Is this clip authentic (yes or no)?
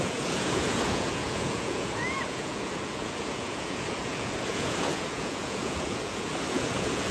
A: no